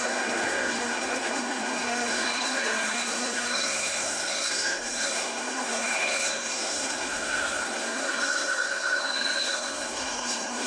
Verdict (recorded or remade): remade